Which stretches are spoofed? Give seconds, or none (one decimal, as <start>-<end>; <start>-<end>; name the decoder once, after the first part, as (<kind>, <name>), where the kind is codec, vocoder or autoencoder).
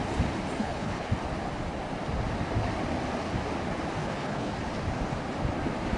0.6-1.1 (codec, HILCodec); 4.0-4.5